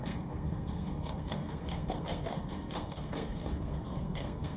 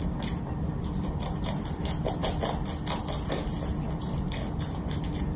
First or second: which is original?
second